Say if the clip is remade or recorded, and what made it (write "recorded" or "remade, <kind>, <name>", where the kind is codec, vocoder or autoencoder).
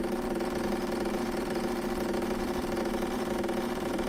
remade, vocoder, BigVGAN v2